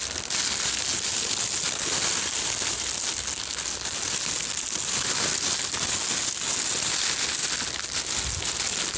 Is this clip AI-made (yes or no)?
no